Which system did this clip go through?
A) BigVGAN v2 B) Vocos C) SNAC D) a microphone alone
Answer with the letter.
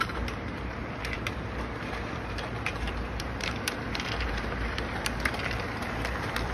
A